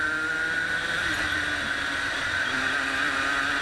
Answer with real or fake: real